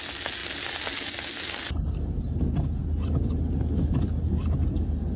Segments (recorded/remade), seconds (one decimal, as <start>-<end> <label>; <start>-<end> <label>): 0.0-5.2 recorded